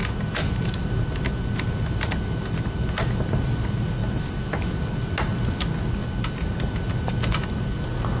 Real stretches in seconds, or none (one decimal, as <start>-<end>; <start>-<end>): 0.0-8.2